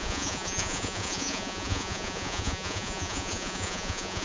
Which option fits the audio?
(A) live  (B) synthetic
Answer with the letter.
B